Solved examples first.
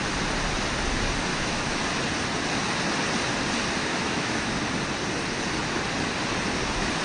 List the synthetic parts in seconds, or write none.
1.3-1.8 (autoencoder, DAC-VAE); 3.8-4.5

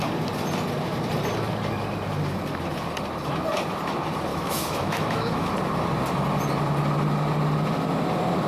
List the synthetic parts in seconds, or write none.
4.3-5.5 (autoencoder, DAC-VAE)

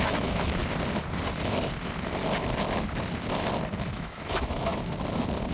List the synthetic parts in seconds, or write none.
0.0-0.6 (autoencoder, DAC-VAE); 3.9-4.7

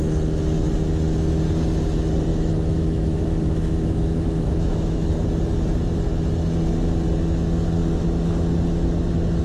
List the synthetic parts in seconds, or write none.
2.3-5.1 (autoencoder, DAC-VAE)